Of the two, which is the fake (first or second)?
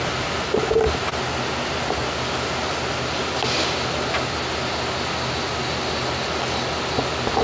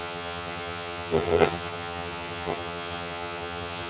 second